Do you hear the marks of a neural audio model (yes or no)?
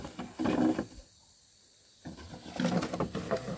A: no